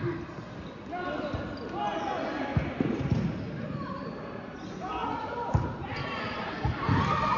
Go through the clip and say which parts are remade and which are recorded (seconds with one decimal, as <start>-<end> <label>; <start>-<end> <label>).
0.0-2.5 recorded; 2.5-3.3 remade; 3.3-5.0 recorded; 5.0-7.4 remade